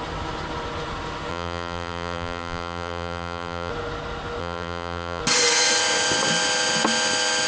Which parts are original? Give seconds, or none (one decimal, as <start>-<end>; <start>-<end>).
0.0-1.3; 3.7-4.4; 5.2-7.5